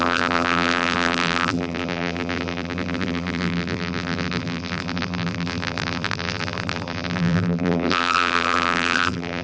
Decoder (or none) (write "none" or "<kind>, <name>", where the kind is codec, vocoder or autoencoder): vocoder, BigVGAN v2